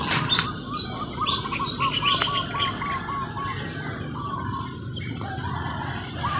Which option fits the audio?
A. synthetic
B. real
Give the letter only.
B